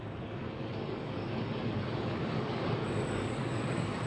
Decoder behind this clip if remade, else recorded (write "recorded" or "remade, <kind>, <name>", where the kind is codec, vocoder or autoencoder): remade, codec, DAC